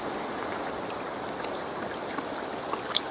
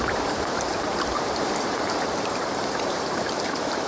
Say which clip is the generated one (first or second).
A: second